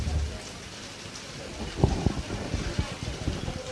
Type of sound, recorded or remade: recorded